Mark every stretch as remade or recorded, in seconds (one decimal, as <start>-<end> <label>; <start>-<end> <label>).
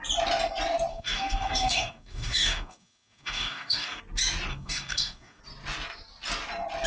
0.0-0.9 recorded; 0.9-4.0 remade; 4.0-4.5 recorded; 4.5-5.4 remade; 5.4-6.9 recorded